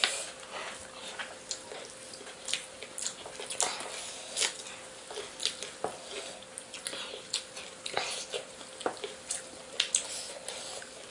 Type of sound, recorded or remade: recorded